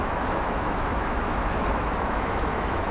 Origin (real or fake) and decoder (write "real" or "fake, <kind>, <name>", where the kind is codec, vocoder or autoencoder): fake, autoencoder, DAC-VAE